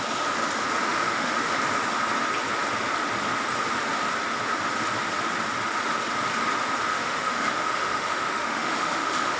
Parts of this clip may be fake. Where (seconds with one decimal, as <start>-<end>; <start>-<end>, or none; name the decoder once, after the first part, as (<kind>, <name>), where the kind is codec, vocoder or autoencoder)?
0.9-1.5 (autoencoder, DAC-VAE); 6.9-9.4